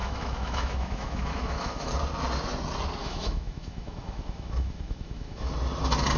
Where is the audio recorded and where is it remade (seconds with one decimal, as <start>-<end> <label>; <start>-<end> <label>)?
0.0-1.9 remade; 1.9-3.0 recorded; 3.0-5.5 remade; 5.5-6.2 recorded